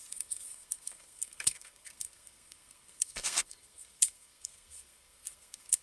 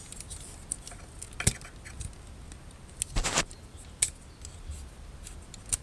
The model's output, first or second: first